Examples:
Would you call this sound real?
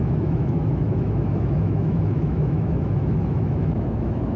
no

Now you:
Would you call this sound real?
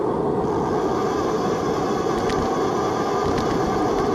yes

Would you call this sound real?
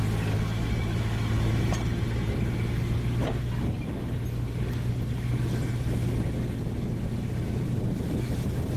yes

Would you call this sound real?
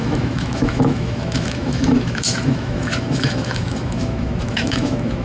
no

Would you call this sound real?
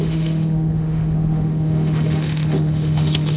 no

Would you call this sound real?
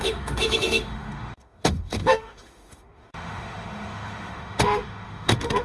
no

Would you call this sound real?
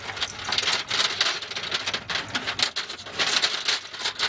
yes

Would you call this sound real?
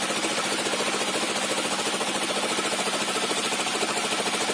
yes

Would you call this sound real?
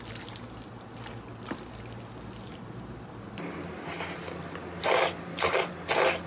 yes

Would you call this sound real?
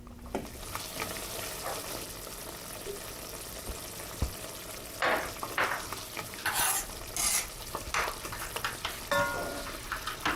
yes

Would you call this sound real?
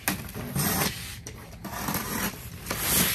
yes